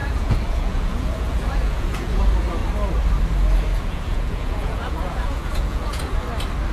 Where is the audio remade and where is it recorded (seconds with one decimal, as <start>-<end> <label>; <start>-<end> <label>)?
0.0-2.2 remade; 2.2-3.7 recorded; 3.7-6.0 remade; 6.0-6.7 recorded